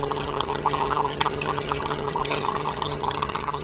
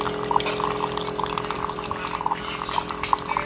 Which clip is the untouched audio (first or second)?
second